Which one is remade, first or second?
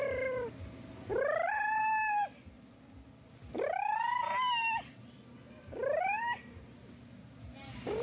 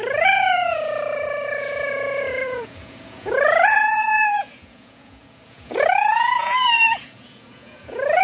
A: second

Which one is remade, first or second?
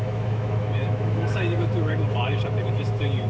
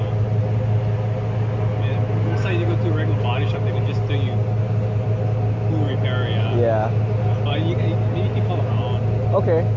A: first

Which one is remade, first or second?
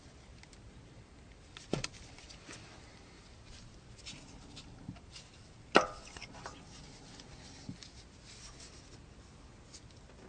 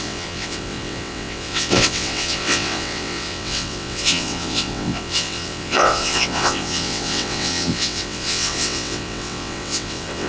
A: second